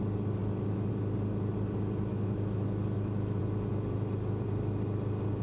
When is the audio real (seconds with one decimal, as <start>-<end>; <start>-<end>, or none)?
0.0-2.1; 3.4-5.4